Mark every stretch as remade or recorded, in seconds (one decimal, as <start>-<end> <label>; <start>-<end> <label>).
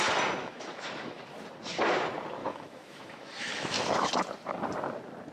0.0-0.4 recorded; 0.4-1.2 remade; 1.2-2.4 recorded; 2.4-4.1 remade; 4.1-5.3 recorded